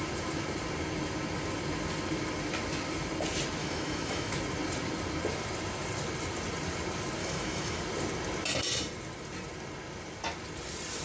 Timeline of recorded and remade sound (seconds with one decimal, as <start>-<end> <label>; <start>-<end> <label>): 0.0-3.6 recorded; 3.6-4.3 remade; 4.3-7.2 recorded; 7.2-7.8 remade; 7.8-11.0 recorded